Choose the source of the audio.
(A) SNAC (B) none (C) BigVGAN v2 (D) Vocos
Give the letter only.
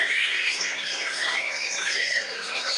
A